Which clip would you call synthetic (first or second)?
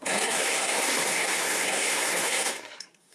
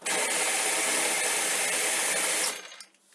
first